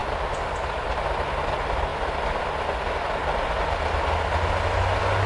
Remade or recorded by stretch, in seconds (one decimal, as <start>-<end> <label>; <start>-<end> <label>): 0.0-5.3 recorded